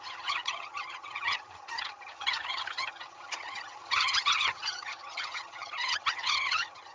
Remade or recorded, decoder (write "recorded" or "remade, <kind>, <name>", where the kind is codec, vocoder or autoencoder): remade, vocoder, HiFi-GAN